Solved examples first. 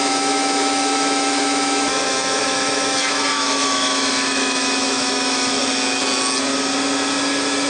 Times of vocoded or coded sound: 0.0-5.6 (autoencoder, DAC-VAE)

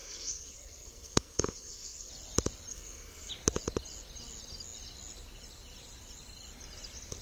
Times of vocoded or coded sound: 0.0-2.1 (codec, SNAC); 2.7-3.3

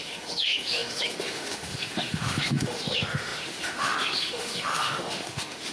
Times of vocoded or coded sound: 0.0-5.7 (autoencoder, DAC-VAE)

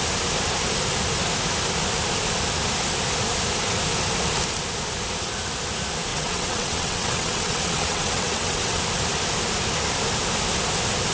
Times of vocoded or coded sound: 6.1-8.8 (vocoder, WaveNeXt)

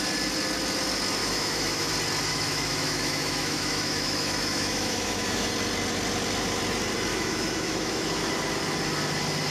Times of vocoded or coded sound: 1.2-1.9 (autoencoder, DAC-VAE); 2.3-5.5; 7.1-8.3

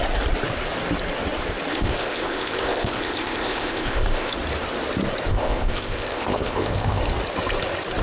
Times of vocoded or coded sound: 1.7-4.3 (codec, ZipCodec); 5.3-7.0

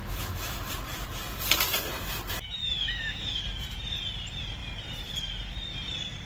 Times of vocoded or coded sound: 0.0-0.7 (autoencoder, DAC-VAE); 2.6-3.4

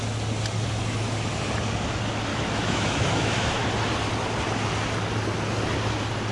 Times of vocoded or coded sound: 2.3-3.6 (autoencoder, DAC-VAE)